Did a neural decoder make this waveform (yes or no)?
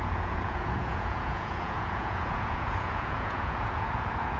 yes